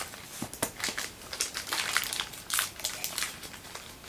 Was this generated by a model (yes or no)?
no